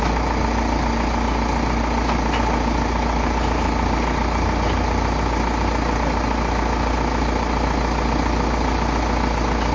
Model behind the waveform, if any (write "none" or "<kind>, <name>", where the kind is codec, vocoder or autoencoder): none